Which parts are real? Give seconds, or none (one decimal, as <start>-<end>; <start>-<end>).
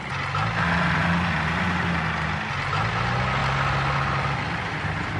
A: 0.0-5.2